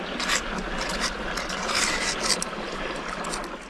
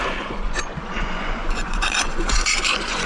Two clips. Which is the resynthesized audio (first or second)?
second